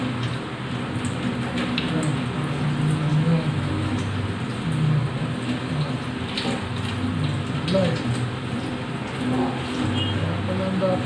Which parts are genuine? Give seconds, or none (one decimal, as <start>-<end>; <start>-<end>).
0.0-3.1; 3.7-11.1